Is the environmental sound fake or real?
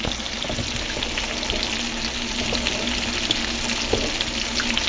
real